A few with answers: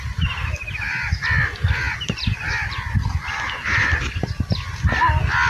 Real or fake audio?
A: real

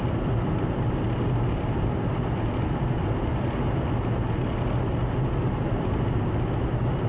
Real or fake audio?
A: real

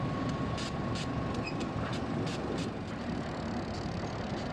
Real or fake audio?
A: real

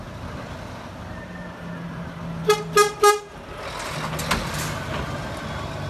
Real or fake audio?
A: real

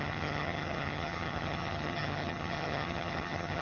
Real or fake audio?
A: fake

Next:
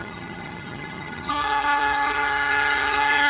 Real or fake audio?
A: fake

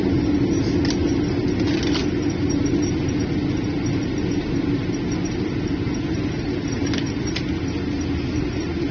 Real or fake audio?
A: real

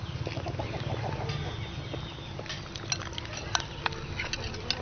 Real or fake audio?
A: real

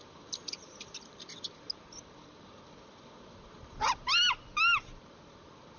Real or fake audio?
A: real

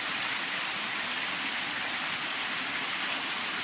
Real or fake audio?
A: real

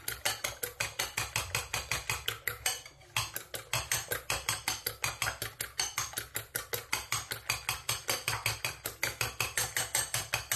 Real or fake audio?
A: real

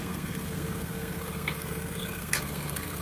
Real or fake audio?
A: fake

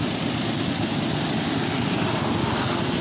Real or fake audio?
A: real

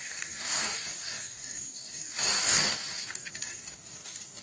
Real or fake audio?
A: fake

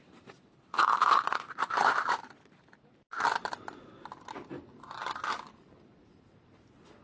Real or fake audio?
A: real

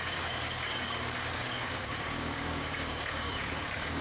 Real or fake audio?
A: fake